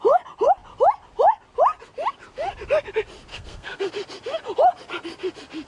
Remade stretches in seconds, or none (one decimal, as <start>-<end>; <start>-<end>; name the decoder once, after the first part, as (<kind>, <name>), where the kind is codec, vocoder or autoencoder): 3.3-3.9 (codec, SNAC)